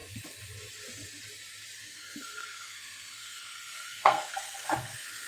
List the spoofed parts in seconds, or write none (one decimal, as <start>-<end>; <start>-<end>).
1.8-5.3

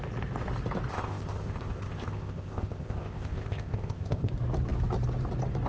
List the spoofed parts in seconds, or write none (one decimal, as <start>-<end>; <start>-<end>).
0.9-4.3